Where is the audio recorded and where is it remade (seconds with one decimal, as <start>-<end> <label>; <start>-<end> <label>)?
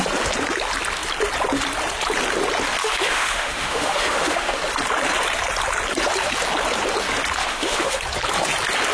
0.0-2.8 recorded; 2.8-4.6 remade; 4.6-7.4 recorded; 7.4-8.0 remade; 8.0-8.9 recorded